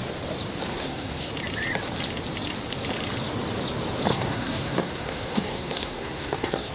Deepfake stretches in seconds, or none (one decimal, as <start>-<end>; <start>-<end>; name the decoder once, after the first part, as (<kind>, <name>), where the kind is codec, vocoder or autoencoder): 0.7-1.3 (codec, SNAC); 4.1-6.7